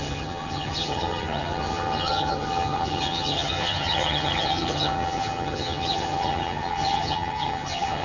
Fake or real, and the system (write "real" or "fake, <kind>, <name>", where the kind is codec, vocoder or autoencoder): fake, vocoder, HiFi-GAN